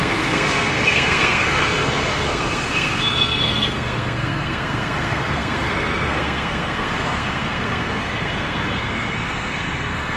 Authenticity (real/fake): fake